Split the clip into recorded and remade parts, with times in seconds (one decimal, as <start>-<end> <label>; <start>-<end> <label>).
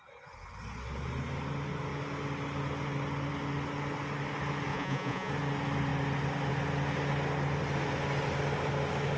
0.0-4.7 recorded; 4.7-5.3 remade; 5.3-9.2 recorded